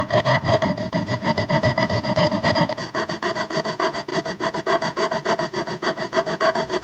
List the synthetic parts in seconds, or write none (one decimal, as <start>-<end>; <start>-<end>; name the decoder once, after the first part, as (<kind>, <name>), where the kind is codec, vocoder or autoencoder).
none